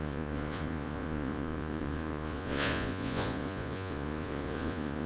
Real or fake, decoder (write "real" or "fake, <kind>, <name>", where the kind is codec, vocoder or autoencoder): fake, vocoder, Vocos